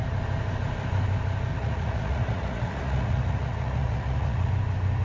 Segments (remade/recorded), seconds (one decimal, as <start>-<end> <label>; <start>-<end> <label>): 0.0-1.5 recorded; 1.5-4.5 remade; 4.5-5.0 recorded